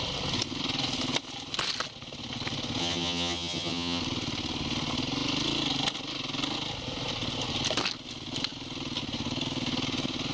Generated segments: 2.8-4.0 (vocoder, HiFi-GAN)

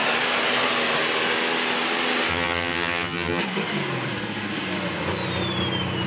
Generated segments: 2.3-3.4 (vocoder, HiFi-GAN)

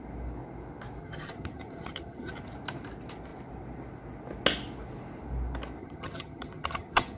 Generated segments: 1.0-2.3 (vocoder, HiFi-GAN); 5.8-7.2

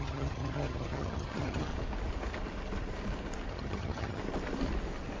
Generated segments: 0.0-1.7 (vocoder, HiFi-GAN); 3.5-4.2

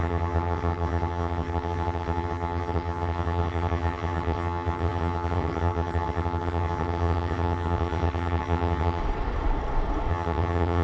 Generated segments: 0.0-9.0 (vocoder, HiFi-GAN); 10.1-10.8

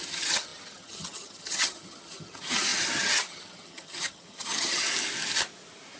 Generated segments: 0.0-4.8 (vocoder, HiFi-GAN)

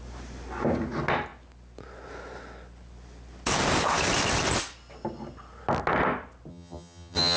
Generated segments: 6.5-7.4 (vocoder, HiFi-GAN)